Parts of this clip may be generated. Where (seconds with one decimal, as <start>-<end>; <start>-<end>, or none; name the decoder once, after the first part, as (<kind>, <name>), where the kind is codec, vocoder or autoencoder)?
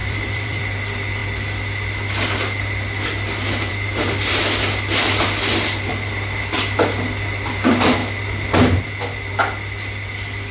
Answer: 0.0-0.6 (vocoder, BigVGAN v2)